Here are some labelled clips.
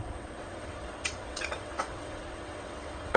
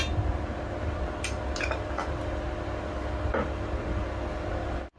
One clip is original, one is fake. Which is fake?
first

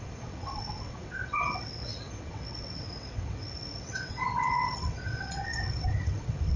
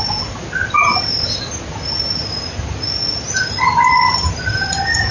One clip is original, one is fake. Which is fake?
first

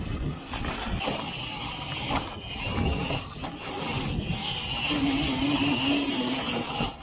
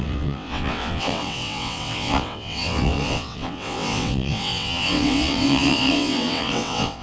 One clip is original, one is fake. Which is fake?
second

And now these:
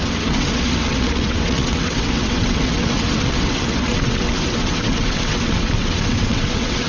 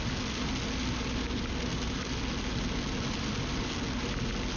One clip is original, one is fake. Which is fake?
first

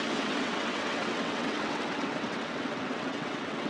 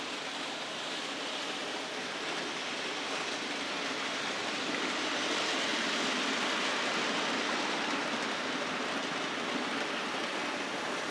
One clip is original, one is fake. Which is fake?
first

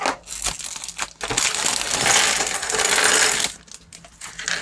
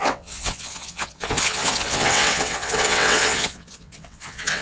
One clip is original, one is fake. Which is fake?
second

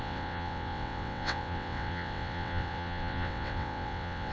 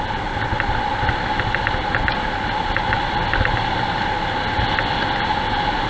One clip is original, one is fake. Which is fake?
first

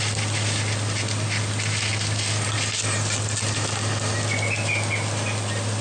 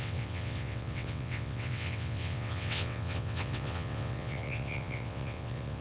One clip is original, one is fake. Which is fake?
second